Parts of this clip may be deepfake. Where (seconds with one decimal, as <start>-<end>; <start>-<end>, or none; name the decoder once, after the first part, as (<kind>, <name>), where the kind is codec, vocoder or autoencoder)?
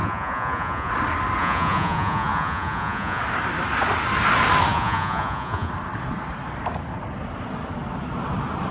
0.0-0.9 (vocoder, Vocos); 1.4-3.2; 4.7-5.7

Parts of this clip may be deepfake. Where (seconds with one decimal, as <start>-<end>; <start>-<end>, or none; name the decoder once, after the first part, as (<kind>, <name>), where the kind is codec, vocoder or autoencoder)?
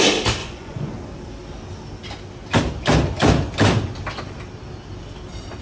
0.4-0.9 (vocoder, Vocos)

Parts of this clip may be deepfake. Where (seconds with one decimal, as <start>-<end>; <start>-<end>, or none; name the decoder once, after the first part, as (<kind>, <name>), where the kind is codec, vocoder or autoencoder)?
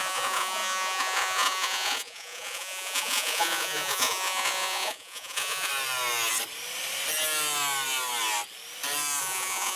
0.0-5.7 (vocoder, Vocos); 9.2-9.8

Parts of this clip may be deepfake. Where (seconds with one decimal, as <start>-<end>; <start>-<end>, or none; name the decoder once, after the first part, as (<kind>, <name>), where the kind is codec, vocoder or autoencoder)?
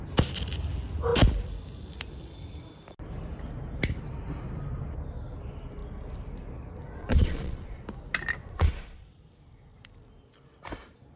7.0-7.8 (vocoder, Vocos); 8.4-9.1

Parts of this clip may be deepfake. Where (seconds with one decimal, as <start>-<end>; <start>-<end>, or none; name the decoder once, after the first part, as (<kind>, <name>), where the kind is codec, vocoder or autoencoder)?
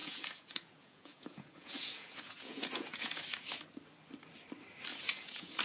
0.0-3.2 (vocoder, Vocos); 4.9-5.6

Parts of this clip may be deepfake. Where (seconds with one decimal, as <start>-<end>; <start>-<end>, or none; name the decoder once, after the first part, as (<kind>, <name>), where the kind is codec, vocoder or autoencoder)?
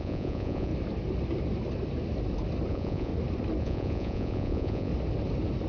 0.0-0.7 (vocoder, Vocos); 2.7-3.1; 3.6-4.9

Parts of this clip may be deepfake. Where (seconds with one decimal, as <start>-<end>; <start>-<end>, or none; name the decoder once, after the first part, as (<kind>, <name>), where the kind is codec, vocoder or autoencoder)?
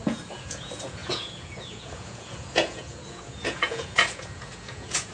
0.0-5.1 (vocoder, Vocos)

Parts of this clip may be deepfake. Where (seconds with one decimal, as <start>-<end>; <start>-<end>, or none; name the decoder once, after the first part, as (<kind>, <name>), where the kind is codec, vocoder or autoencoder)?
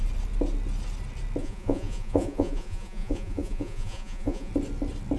1.4-4.5 (vocoder, Vocos)